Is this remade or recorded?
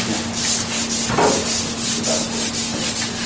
recorded